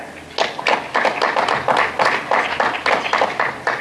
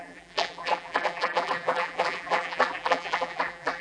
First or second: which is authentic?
first